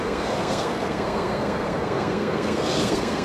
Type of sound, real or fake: fake